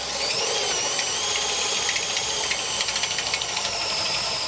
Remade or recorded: recorded